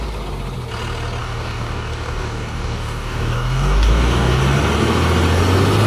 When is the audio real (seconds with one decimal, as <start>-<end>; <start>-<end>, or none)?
0.0-1.2; 4.4-5.9